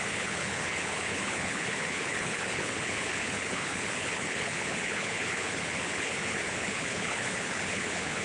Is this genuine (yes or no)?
no